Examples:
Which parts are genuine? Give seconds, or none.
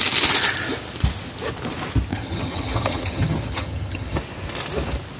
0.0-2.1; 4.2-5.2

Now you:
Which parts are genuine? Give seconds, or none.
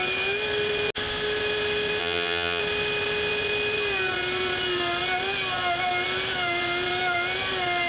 0.0-2.0; 2.6-7.9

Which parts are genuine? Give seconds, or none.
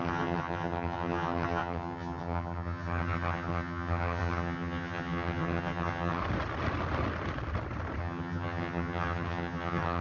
6.2-8.0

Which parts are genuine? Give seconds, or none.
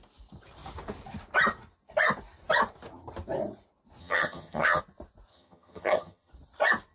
0.0-4.0; 4.8-5.3; 6.3-6.9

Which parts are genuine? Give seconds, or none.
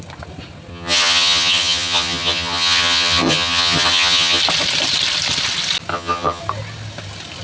0.0-0.7; 4.4-5.9; 6.4-7.4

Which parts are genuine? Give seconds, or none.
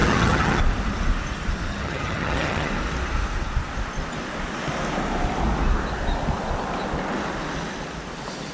0.6-1.7; 2.7-8.5